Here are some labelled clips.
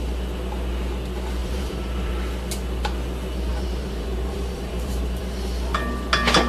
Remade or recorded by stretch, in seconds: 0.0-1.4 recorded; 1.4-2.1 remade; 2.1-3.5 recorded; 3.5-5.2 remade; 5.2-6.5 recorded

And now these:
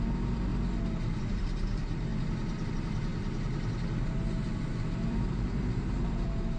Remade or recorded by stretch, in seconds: 0.0-0.5 remade; 0.5-1.2 recorded; 1.2-6.6 remade

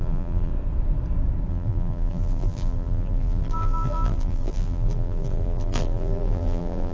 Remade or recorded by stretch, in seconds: 0.0-0.5 remade; 0.5-1.5 recorded; 1.5-6.9 remade

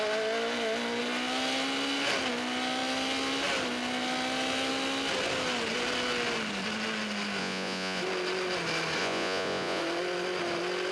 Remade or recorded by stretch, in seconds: 0.0-7.4 recorded; 7.4-8.0 remade; 8.0-9.0 recorded; 9.0-9.8 remade; 9.8-10.9 recorded

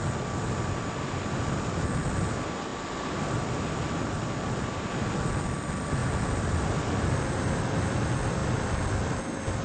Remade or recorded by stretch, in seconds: 0.0-9.6 recorded

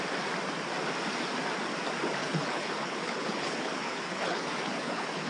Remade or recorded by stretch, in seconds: 0.0-2.2 recorded; 2.2-5.3 remade

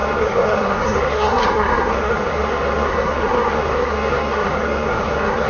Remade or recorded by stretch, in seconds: 0.0-5.5 remade